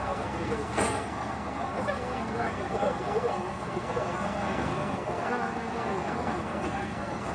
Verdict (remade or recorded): remade